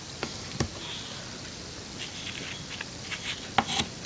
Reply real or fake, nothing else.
real